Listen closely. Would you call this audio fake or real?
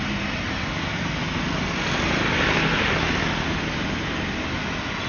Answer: real